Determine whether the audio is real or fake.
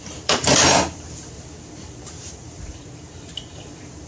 fake